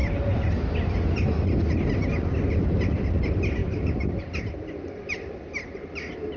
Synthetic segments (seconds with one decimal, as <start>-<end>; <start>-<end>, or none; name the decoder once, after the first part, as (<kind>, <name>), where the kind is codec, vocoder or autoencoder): none